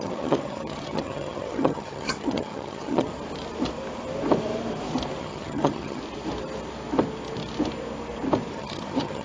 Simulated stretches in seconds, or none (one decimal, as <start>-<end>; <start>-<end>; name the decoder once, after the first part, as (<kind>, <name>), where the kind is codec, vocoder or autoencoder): 0.0-3.1 (vocoder, HiFi-GAN); 5.2-6.0; 8.5-9.2